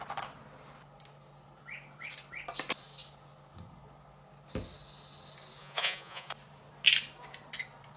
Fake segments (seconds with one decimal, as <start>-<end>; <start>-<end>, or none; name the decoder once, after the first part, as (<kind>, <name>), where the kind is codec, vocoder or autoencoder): 5.6-6.3 (vocoder, Vocos)

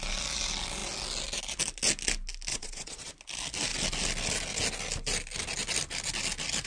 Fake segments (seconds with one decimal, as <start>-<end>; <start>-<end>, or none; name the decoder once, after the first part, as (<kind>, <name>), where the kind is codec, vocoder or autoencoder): 2.5-3.1 (vocoder, Vocos)